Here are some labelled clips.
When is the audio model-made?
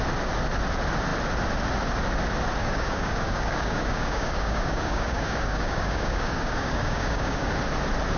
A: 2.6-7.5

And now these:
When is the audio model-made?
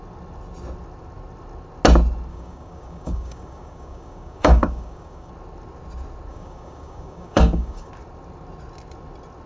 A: 2.3-5.3; 6.3-7.9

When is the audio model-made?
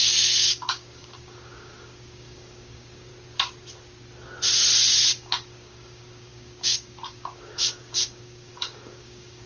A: 0.0-3.1; 5.1-9.5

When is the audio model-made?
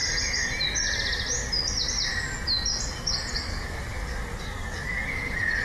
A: 3.5-5.1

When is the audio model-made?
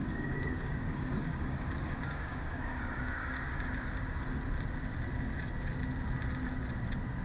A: 0.0-4.2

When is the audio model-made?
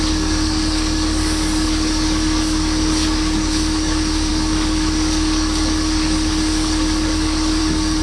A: 0.0-8.0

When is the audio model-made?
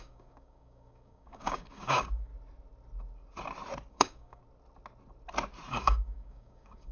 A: 0.0-2.3; 3.9-4.4; 5.7-6.9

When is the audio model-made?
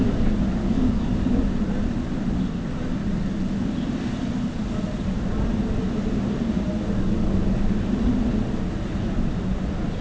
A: 0.6-1.4